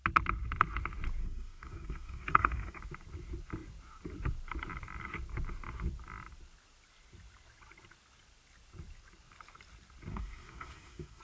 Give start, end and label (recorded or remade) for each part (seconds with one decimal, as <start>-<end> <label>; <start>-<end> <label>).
0.0-1.2 recorded; 1.2-2.8 remade; 2.8-10.1 recorded; 10.1-11.2 remade